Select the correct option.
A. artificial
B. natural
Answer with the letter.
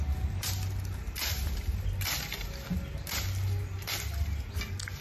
B